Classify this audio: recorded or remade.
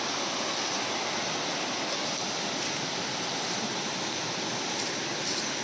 recorded